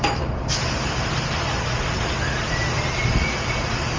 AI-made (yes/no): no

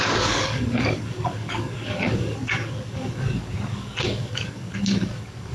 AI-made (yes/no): yes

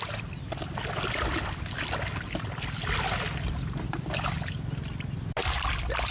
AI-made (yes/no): no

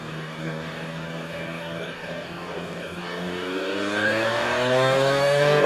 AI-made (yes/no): yes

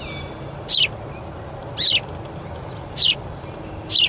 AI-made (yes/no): no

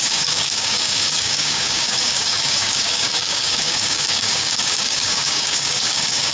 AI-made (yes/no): yes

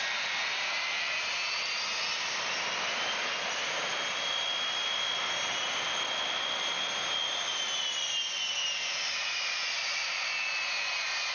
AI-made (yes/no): no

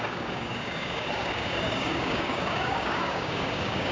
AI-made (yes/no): yes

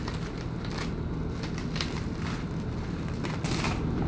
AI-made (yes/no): no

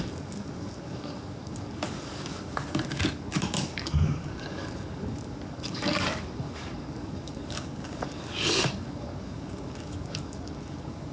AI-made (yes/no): yes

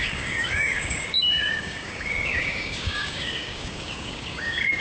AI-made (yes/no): yes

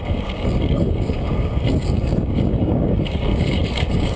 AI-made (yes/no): yes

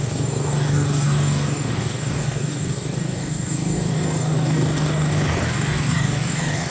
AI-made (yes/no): yes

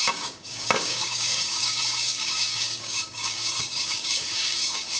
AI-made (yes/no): yes